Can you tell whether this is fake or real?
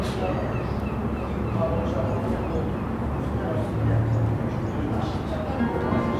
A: real